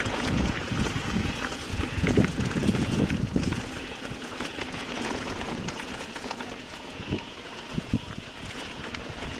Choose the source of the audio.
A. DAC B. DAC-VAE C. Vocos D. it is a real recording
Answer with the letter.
C